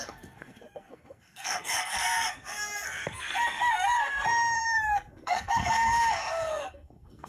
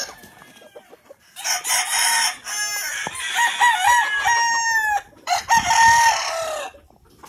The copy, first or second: first